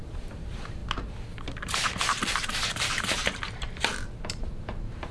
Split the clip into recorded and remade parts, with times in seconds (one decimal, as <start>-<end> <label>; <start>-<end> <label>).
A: 0.0-0.8 remade; 0.8-1.6 recorded; 1.6-5.1 remade